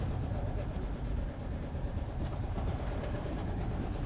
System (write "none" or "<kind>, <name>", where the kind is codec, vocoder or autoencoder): none